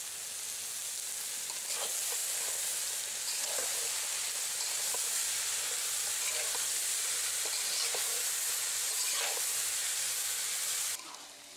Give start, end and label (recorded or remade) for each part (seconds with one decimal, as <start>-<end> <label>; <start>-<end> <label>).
0.0-11.6 recorded

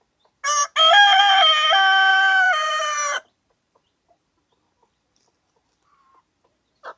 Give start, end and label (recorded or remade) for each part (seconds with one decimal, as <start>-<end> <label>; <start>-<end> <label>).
0.0-2.1 recorded; 2.1-4.5 remade; 4.5-7.0 recorded

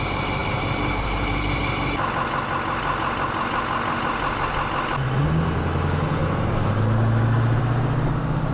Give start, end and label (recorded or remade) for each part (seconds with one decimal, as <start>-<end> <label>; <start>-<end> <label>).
0.0-0.4 recorded; 0.4-1.6 remade; 1.6-8.5 recorded

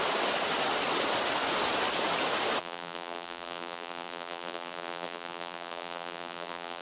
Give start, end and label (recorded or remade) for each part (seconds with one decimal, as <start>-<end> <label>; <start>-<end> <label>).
0.0-2.6 recorded; 2.6-6.8 remade

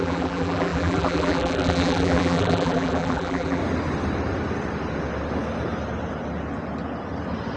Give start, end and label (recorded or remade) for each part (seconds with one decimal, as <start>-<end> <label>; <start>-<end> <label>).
0.0-3.6 remade; 3.6-7.6 recorded

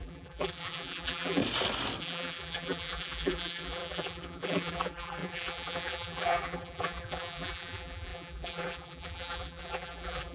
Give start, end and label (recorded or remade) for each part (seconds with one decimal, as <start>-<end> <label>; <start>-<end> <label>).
0.0-1.4 remade; 1.4-2.0 recorded; 2.0-10.3 remade

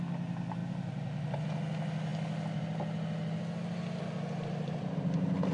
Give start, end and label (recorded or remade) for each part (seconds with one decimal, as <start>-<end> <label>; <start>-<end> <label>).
0.0-0.6 recorded; 0.6-1.4 remade; 1.4-4.4 recorded; 4.4-4.9 remade; 4.9-5.5 recorded